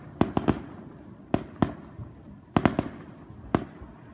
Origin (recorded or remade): recorded